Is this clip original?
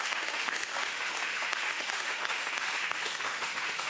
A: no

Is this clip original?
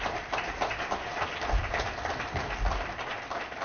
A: yes